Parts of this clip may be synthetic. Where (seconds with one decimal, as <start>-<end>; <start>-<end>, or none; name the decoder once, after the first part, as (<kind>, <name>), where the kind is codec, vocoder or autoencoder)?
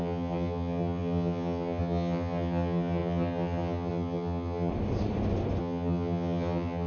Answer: 0.0-4.7 (vocoder, HiFi-GAN); 5.6-6.9